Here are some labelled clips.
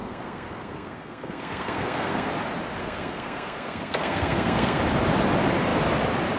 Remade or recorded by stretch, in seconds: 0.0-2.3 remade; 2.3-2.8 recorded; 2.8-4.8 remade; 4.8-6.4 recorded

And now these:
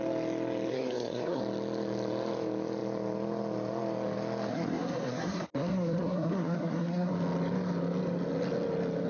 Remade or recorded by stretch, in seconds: 0.0-0.7 recorded; 0.7-1.4 remade; 1.4-4.5 recorded; 4.5-7.1 remade; 7.1-9.1 recorded

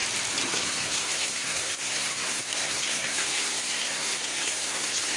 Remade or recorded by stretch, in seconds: 0.0-0.5 recorded; 0.5-5.2 remade